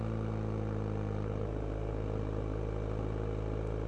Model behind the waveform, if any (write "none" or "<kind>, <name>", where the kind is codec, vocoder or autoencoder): none